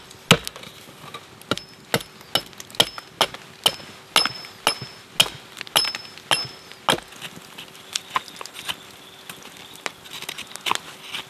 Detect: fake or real real